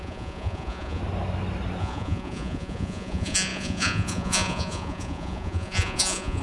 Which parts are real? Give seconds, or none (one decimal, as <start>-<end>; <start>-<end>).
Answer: 1.0-1.8